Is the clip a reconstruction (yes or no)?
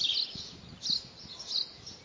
no